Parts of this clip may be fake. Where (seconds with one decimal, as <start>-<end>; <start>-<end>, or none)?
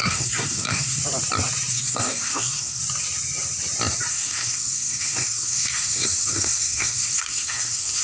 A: 0.0-1.0; 1.7-2.8; 4.1-8.0